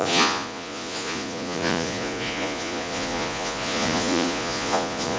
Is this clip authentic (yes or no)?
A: no